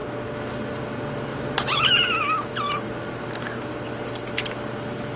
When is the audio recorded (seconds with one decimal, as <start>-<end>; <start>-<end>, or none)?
0.0-1.3; 2.8-5.2